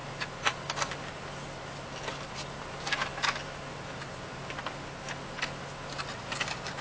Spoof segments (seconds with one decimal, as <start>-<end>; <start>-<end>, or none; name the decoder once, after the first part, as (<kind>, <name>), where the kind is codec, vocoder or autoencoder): none